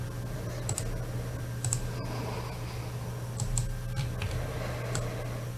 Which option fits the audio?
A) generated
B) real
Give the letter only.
B